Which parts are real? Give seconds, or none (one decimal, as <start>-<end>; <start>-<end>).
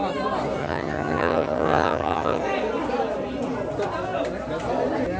0.0-0.6; 2.4-5.2